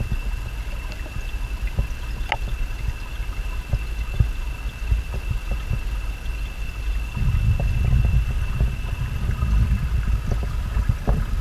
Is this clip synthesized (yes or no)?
no